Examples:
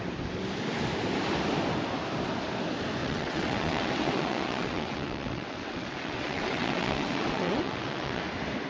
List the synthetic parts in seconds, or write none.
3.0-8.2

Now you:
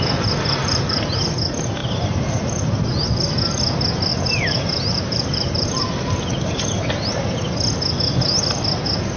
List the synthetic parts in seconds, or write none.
0.6-1.3; 1.8-2.4; 4.1-5.8

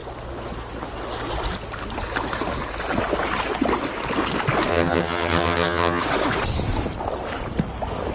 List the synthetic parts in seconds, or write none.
4.7-6.0

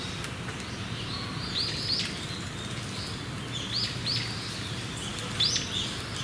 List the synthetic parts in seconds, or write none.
none

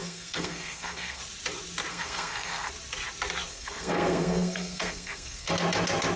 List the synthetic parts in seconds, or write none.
0.0-1.2; 1.9-2.7; 3.5-5.5

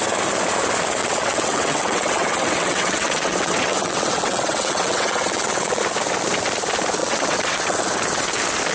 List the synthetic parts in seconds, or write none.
1.0-5.8; 7.0-7.8

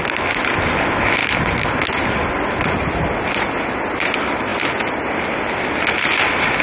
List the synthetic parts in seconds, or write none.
none

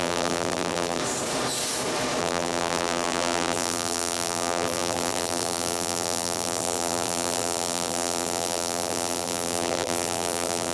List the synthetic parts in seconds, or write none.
0.0-1.0; 2.2-10.7